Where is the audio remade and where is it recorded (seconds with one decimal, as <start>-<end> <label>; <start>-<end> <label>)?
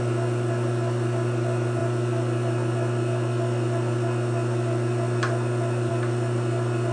0.0-6.9 recorded